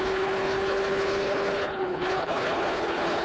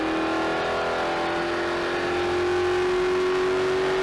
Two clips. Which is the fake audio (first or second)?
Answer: first